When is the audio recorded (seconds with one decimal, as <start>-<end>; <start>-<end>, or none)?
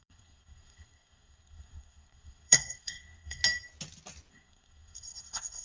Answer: 3.4-4.3